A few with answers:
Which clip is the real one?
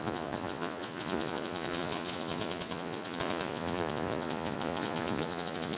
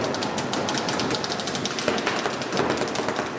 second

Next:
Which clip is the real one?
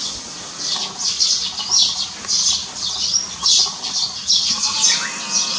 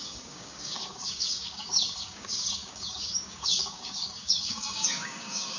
first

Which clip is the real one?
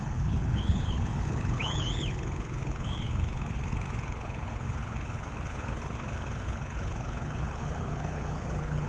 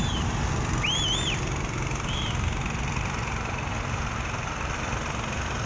second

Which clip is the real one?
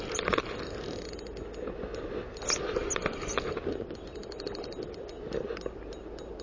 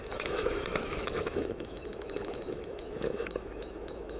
first